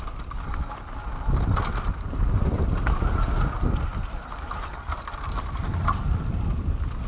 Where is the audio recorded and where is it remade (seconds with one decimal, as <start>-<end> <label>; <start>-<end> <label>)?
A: 0.0-7.1 remade